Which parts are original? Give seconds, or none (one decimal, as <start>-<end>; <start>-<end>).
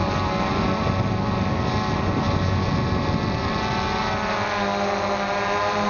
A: 0.0-5.9